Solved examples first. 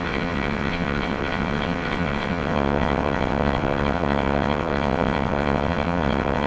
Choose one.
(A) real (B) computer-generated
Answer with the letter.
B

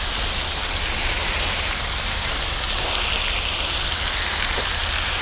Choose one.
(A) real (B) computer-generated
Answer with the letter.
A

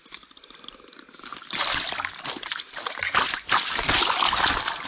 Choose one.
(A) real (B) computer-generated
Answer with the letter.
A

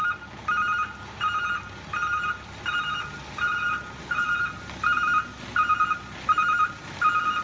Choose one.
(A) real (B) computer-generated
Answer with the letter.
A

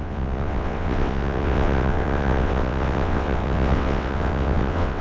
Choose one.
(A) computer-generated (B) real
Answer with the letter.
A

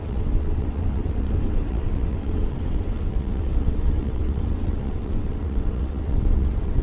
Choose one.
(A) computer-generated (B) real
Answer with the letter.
A